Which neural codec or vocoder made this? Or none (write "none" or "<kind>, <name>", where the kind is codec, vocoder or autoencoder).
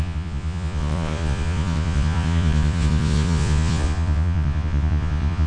vocoder, Vocos